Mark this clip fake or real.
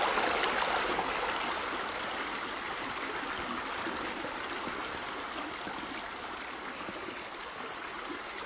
real